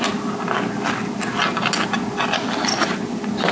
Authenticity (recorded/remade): recorded